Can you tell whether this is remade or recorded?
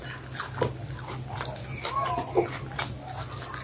recorded